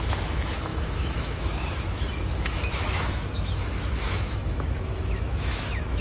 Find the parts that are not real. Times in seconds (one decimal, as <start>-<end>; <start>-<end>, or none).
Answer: 0.0-6.0